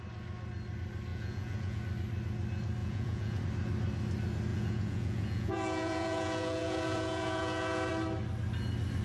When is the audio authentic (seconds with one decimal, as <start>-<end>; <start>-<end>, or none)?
0.0-1.1; 1.8-2.8; 3.4-4.5; 7.9-9.0